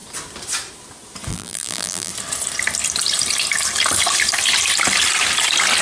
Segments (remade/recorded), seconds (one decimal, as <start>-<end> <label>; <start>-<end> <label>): 0.0-1.3 recorded; 1.3-2.1 remade; 2.1-5.8 recorded